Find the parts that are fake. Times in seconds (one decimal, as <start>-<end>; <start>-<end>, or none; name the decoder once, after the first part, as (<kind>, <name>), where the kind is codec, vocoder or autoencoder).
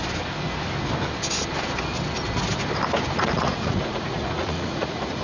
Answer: 3.1-5.2 (vocoder, Vocos)